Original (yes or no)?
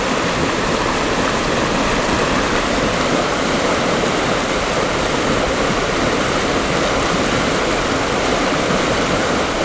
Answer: yes